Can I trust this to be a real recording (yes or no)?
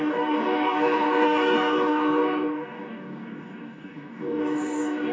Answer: no